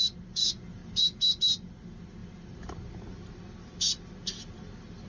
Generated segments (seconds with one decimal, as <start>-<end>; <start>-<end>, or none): none